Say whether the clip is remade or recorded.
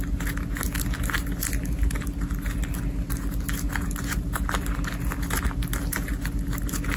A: recorded